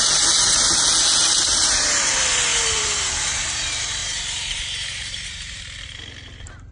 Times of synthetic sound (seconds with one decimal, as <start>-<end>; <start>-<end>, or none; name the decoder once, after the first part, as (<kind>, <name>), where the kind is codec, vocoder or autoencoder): 1.2-2.1 (vocoder, BigVGAN v2); 2.5-3.2; 4.0-5.6